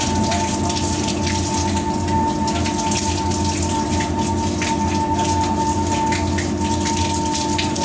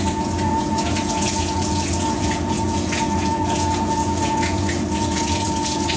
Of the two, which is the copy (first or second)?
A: second